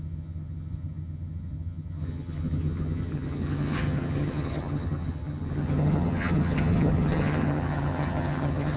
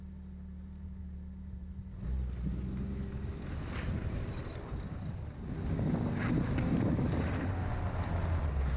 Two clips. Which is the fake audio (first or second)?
first